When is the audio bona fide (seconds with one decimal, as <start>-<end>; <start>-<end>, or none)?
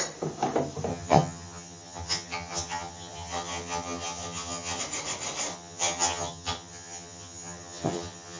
0.0-0.9; 4.8-5.5